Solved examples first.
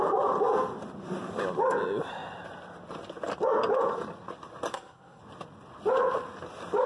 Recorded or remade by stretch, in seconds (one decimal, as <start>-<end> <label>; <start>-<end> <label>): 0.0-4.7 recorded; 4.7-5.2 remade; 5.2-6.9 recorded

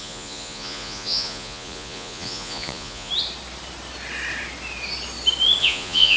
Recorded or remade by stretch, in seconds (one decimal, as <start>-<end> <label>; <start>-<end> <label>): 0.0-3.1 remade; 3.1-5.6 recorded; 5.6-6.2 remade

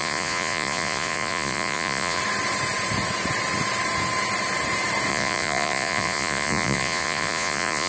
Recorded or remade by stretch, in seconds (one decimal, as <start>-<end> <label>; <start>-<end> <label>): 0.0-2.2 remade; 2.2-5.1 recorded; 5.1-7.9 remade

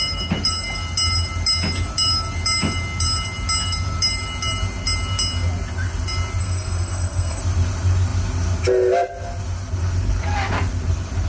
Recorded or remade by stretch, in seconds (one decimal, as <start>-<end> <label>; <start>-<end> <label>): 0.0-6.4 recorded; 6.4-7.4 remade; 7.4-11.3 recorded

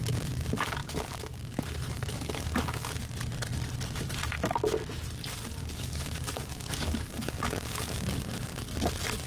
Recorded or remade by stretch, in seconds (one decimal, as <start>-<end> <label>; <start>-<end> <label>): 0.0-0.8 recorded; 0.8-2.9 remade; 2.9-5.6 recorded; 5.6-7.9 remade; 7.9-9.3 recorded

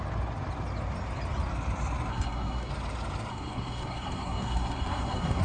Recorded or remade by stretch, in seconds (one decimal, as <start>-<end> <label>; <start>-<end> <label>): 0.0-2.1 recorded; 2.1-2.7 remade; 2.7-3.3 recorded; 3.3-5.4 remade